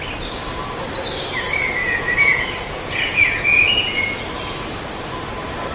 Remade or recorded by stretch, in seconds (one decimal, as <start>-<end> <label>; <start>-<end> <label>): 0.0-1.8 recorded; 1.8-4.2 remade; 4.2-5.7 recorded